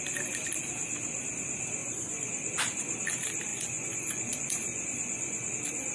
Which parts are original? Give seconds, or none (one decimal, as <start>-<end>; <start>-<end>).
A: 0.0-1.8; 2.5-3.5; 5.5-5.9